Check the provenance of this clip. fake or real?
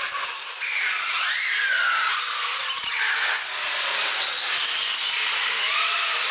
real